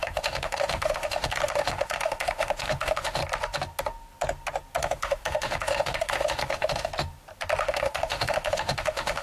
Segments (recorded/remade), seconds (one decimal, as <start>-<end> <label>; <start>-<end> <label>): 0.0-3.2 remade; 3.2-4.8 recorded; 4.8-6.9 remade; 6.9-7.6 recorded; 7.6-9.2 remade